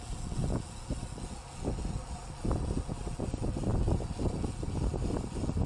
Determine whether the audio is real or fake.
real